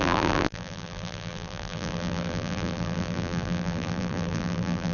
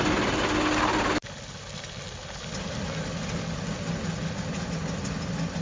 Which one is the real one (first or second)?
second